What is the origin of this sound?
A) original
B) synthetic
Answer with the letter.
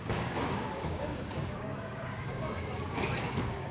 B